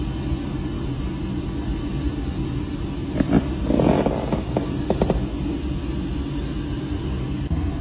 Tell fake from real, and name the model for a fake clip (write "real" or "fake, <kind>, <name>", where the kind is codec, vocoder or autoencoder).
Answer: real